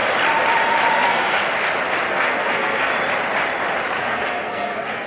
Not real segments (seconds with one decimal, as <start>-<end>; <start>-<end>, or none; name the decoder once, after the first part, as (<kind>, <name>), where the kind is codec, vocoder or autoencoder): 0.9-1.4 (codec, SNAC); 2.1-2.9; 4.0-5.1